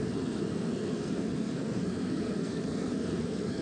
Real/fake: fake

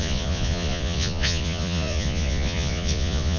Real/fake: fake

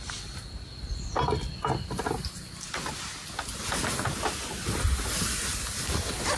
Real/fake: real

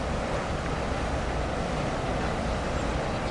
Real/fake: real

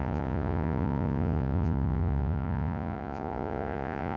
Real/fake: fake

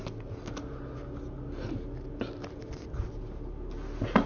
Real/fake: real